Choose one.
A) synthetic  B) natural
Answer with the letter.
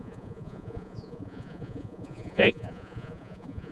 A